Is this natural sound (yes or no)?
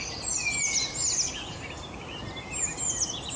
yes